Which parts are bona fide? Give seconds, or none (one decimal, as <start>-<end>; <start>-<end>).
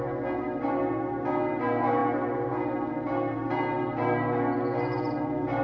0.0-5.6